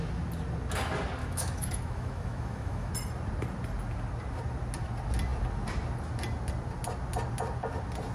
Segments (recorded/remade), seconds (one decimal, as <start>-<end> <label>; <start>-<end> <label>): 0.0-1.2 recorded; 1.2-2.9 remade; 2.9-8.1 recorded